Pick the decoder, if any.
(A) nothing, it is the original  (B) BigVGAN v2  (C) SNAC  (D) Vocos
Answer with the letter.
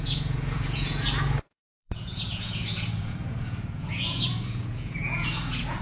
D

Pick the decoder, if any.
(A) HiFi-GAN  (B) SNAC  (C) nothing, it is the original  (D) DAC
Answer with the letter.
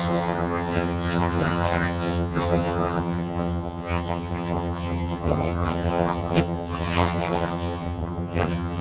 A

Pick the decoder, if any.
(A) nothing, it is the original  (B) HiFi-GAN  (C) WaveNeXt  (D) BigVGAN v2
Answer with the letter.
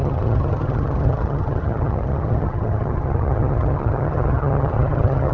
B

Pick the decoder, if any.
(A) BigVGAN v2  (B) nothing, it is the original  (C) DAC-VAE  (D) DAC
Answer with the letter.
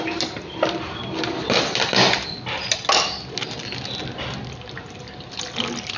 B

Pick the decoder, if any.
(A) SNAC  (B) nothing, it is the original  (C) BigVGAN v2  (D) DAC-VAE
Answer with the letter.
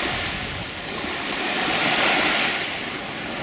B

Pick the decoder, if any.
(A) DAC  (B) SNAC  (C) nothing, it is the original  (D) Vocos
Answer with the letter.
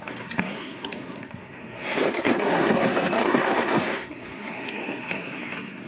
B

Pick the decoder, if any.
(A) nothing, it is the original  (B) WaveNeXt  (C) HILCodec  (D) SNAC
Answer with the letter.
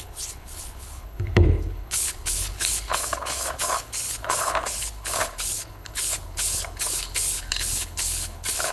C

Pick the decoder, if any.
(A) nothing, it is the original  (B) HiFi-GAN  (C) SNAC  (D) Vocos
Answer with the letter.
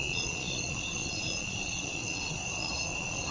D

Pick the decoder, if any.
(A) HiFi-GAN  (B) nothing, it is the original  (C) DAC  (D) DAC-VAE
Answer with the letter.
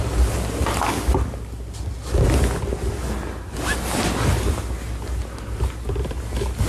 B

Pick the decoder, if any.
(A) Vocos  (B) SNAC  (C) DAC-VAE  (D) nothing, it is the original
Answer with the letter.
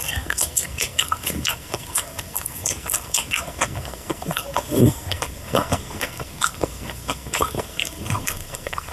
B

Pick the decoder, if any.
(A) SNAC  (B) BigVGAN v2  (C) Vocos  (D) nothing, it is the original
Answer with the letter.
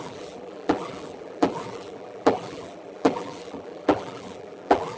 B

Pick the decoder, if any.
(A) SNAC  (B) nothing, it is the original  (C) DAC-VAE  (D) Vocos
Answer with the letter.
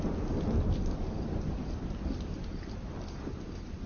B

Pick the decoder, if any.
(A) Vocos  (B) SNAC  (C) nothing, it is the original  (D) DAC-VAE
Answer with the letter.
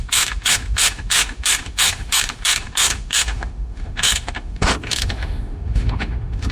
D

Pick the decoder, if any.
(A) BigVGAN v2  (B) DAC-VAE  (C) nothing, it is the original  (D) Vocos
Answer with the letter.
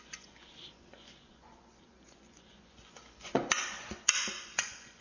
D